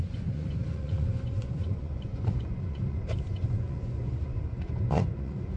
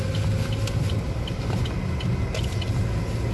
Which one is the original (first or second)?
second